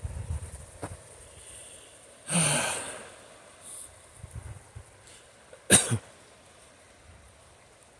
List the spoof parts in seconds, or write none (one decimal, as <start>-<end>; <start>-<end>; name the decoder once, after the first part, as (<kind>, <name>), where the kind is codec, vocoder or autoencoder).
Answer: none